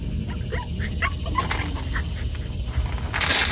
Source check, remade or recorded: recorded